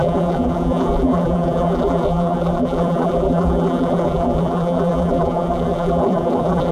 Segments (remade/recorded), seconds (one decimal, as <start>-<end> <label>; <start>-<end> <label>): 0.0-6.7 remade